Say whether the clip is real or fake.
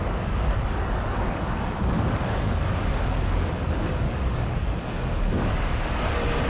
fake